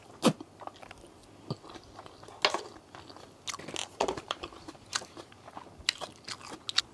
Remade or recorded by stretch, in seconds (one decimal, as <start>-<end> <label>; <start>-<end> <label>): 0.0-3.8 recorded; 3.8-5.3 remade; 5.3-6.9 recorded